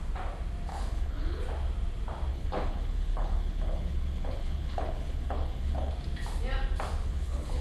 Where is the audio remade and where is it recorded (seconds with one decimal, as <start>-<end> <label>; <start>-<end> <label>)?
0.0-0.7 recorded; 0.7-1.4 remade; 1.4-2.3 recorded; 2.3-5.9 remade; 5.9-7.0 recorded; 7.0-7.6 remade